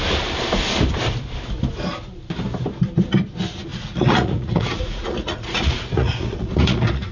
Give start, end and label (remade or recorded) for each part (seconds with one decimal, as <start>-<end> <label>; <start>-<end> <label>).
0.0-3.7 recorded; 3.7-7.1 remade